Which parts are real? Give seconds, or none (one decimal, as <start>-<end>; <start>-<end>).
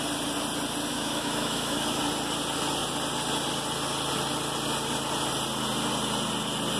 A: 0.0-0.9; 2.0-6.8